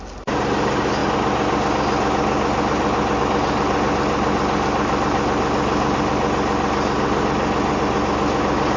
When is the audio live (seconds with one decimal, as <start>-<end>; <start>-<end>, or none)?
0.0-8.8